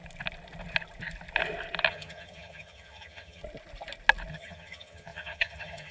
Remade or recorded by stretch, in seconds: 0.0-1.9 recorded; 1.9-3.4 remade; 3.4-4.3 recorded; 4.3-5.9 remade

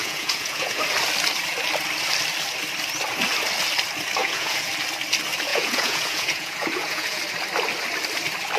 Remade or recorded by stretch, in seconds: 0.0-0.8 remade; 0.8-4.2 recorded; 4.2-4.7 remade; 4.7-5.5 recorded; 5.5-7.2 remade; 7.2-8.6 recorded

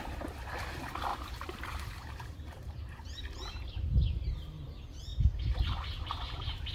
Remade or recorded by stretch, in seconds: 0.0-1.1 recorded; 1.1-3.2 remade; 3.2-6.7 recorded

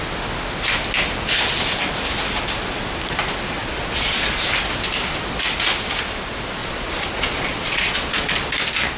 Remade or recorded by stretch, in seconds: 0.0-3.6 recorded; 3.6-4.4 remade; 4.4-6.6 recorded; 6.6-8.3 remade; 8.3-9.0 recorded

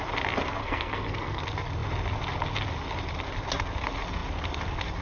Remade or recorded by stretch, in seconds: 0.0-0.6 recorded; 0.6-1.4 remade; 1.4-5.0 recorded

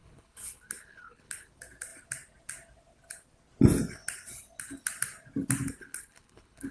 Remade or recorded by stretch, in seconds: 0.0-1.5 remade; 1.5-5.8 recorded; 5.8-6.7 remade

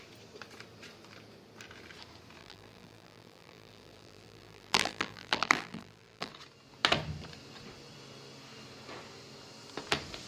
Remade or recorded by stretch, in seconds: 0.0-2.4 recorded; 2.4-6.3 remade; 6.3-10.3 recorded